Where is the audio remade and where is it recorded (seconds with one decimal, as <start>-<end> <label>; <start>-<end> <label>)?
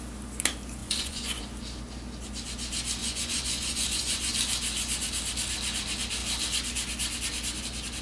0.0-0.8 recorded; 0.8-1.4 remade; 1.4-3.0 recorded; 3.0-4.3 remade; 4.3-8.0 recorded